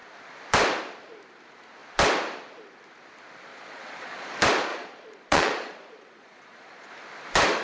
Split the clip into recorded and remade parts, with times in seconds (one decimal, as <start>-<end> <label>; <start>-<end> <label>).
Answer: 0.0-3.5 recorded; 3.5-4.3 remade; 4.3-4.7 recorded; 4.7-6.9 remade; 6.9-7.6 recorded